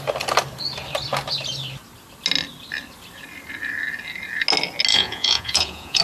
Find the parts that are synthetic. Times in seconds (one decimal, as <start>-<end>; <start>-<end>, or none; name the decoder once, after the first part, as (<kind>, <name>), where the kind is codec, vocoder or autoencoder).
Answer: 4.9-6.0 (vocoder, Vocos)